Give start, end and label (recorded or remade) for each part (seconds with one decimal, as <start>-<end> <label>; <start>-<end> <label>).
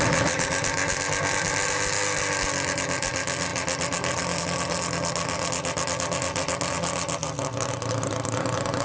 0.0-8.8 recorded